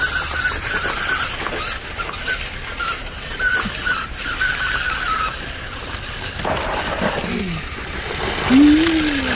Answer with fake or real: real